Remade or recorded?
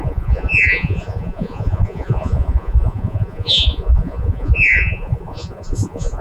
remade